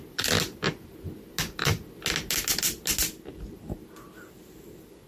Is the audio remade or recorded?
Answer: recorded